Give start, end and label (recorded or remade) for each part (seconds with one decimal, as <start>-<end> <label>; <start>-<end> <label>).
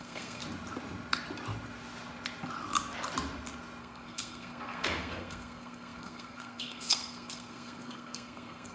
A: 0.0-0.4 remade; 0.4-3.8 recorded; 3.8-8.7 remade